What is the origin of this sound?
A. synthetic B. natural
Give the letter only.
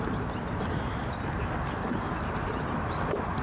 B